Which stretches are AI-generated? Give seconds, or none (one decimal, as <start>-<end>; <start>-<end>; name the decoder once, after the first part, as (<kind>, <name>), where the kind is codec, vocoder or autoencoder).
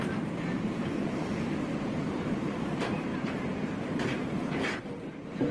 0.0-5.5 (vocoder, BigVGAN v2)